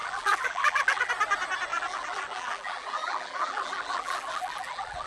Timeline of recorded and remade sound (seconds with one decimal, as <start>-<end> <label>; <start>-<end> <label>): 0.0-1.1 remade; 1.1-1.7 recorded; 1.7-5.1 remade